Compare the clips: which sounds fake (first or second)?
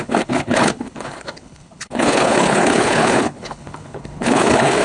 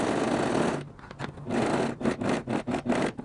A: first